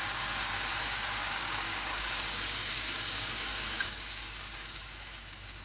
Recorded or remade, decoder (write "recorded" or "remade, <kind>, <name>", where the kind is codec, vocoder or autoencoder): remade, codec, DAC